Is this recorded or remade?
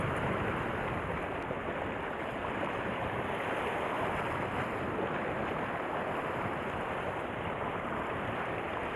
recorded